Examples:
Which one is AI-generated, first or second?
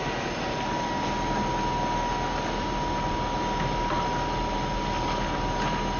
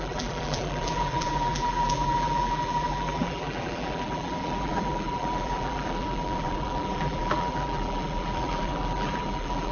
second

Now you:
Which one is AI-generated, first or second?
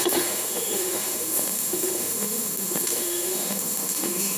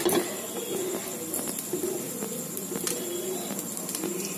first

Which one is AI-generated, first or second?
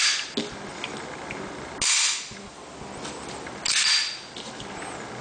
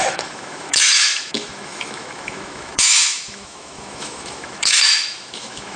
second